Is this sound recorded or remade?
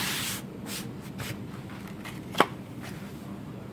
recorded